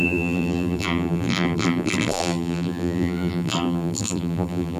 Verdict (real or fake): fake